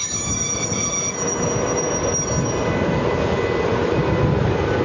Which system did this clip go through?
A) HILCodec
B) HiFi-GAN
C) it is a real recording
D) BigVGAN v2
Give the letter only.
C